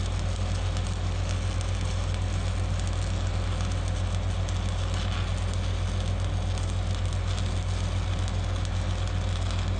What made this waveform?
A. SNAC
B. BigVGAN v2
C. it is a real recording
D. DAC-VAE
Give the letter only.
C